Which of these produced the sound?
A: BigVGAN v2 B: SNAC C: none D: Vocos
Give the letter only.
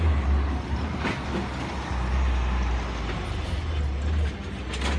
C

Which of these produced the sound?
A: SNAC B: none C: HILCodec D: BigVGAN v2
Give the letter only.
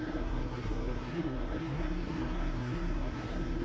A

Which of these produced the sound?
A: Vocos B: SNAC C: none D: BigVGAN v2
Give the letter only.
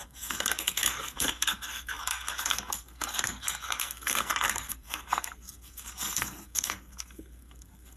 B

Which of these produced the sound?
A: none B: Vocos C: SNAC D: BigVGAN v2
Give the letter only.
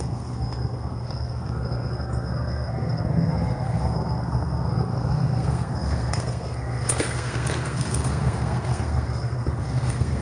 C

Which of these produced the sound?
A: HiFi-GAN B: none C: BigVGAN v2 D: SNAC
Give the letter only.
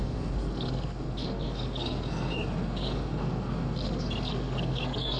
D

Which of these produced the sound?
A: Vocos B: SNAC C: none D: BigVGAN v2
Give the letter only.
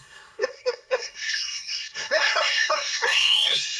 B